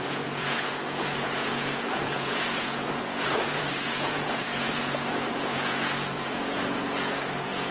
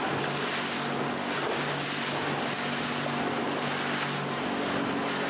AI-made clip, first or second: first